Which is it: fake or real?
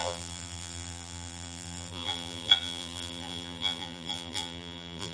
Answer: fake